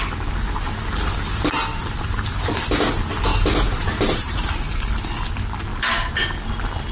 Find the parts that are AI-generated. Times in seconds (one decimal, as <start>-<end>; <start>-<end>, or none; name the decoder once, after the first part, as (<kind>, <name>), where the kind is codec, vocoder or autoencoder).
1.7-2.4 (vocoder, BigVGAN v2); 3.3-4.9